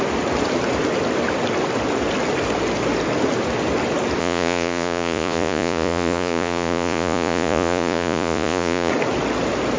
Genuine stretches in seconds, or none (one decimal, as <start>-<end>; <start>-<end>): 0.0-4.2; 8.9-9.8